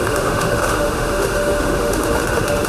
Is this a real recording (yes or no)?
no